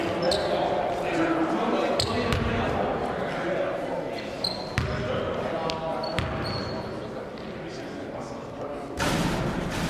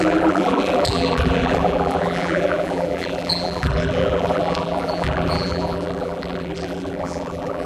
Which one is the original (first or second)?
first